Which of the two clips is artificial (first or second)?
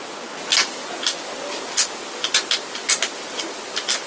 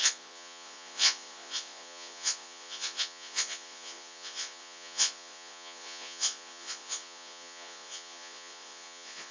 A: second